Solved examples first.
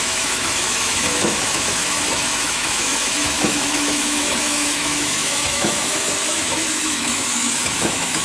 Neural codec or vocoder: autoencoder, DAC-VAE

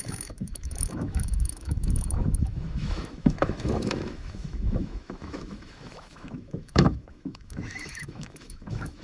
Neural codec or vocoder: autoencoder, DAC-VAE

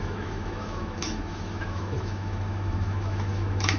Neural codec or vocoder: autoencoder, DAC-VAE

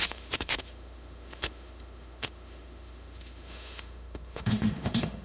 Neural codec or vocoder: autoencoder, DAC-VAE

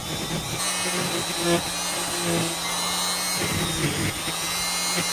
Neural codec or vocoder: none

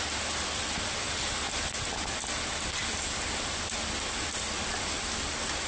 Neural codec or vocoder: none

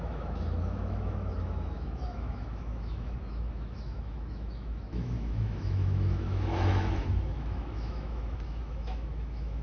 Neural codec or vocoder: autoencoder, DAC-VAE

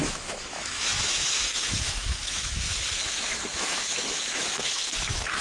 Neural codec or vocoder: autoencoder, DAC-VAE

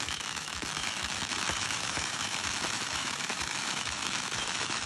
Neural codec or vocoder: autoencoder, DAC-VAE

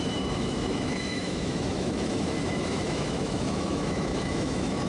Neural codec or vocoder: autoencoder, DAC-VAE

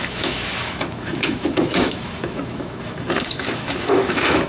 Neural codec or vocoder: autoencoder, DAC-VAE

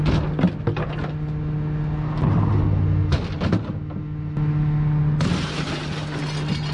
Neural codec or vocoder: none